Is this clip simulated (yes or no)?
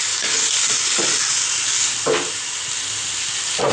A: no